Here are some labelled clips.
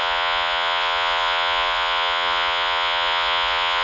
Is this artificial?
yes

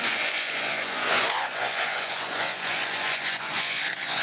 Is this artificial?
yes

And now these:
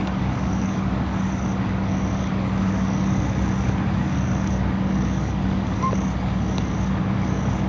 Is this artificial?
yes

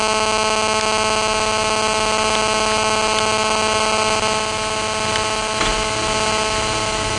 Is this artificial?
no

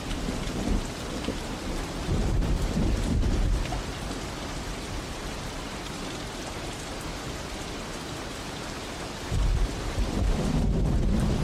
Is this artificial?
yes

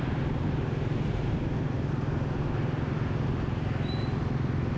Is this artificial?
no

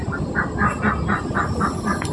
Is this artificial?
no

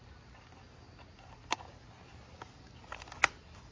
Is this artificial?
no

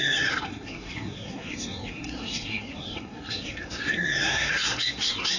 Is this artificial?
yes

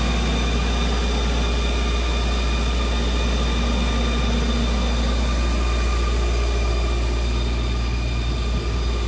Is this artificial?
no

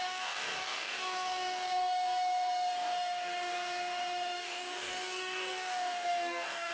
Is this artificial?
yes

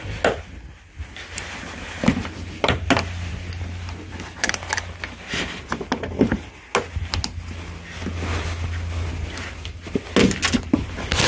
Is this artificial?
no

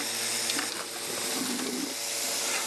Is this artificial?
no